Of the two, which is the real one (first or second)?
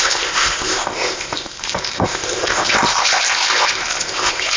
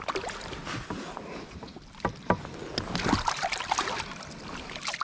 second